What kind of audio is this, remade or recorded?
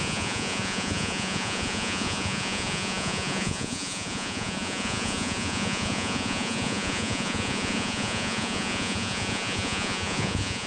remade